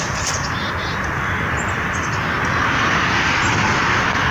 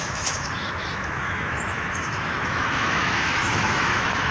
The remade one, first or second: second